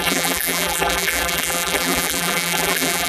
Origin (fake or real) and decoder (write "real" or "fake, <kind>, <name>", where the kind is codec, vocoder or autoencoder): fake, vocoder, BigVGAN v2